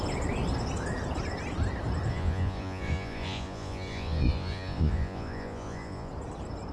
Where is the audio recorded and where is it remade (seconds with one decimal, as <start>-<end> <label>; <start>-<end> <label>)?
0.0-2.1 recorded; 2.1-6.1 remade; 6.1-6.7 recorded